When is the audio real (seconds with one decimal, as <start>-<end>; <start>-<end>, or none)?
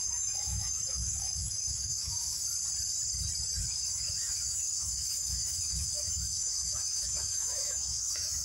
2.4-3.6